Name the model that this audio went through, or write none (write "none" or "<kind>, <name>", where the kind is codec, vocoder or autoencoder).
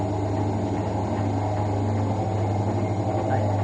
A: none